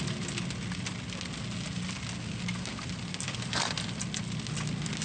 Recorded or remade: recorded